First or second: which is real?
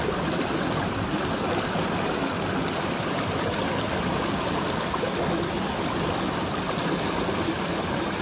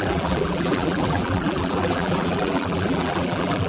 first